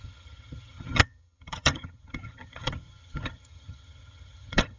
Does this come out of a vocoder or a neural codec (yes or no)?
yes